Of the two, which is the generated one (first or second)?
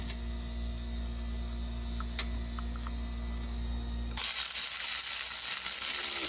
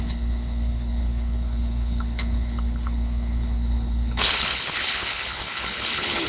second